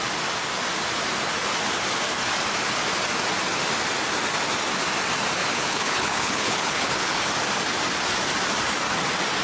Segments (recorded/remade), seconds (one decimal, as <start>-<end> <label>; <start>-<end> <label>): 0.0-5.4 recorded; 5.4-7.3 remade; 7.3-9.4 recorded